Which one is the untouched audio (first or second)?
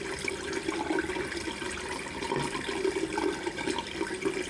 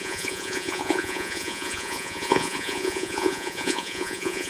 first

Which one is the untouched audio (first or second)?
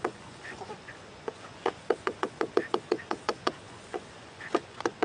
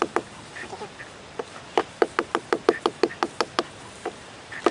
second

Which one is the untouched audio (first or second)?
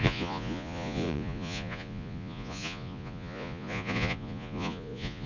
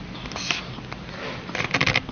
second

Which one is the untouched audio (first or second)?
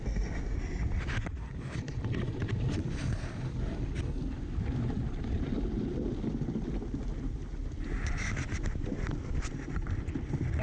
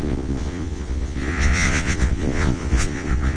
first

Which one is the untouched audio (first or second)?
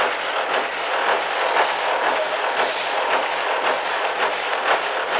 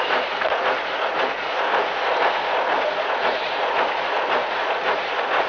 first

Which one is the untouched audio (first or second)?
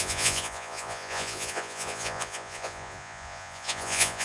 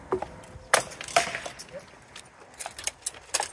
second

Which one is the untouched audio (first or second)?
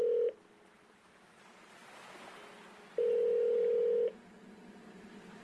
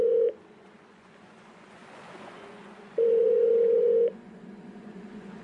first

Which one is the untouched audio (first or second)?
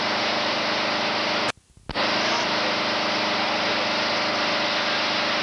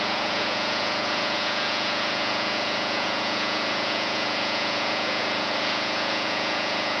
first